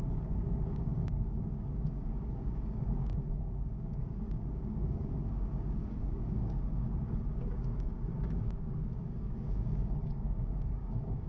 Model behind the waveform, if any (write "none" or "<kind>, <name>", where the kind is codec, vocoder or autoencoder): codec, DAC